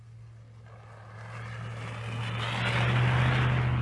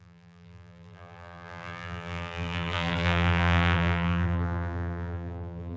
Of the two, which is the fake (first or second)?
second